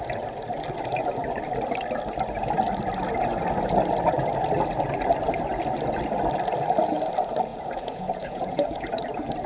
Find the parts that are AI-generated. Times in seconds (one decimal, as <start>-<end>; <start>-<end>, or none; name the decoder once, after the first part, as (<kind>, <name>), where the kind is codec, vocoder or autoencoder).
7.5-9.0 (vocoder, Vocos)